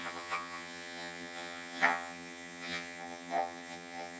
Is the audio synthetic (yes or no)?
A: yes